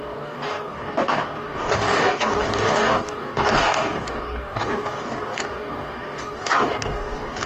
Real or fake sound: fake